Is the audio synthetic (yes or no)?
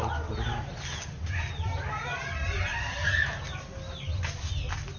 no